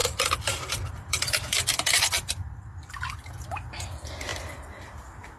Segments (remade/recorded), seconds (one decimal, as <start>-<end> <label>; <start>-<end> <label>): 0.0-2.9 remade; 2.9-4.3 recorded; 4.3-5.0 remade; 5.0-5.4 recorded